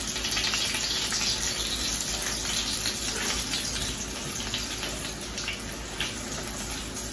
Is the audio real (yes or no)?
yes